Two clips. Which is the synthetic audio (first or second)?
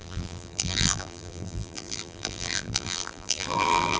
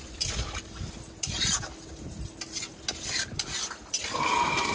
first